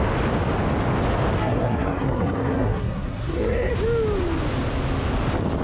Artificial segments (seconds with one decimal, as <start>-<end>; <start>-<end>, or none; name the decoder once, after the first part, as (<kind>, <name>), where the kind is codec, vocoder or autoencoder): 1.4-3.7 (codec, SNAC)